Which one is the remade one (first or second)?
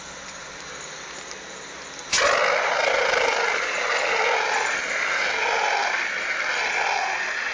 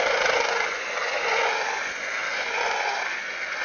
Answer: second